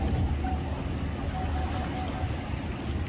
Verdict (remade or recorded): recorded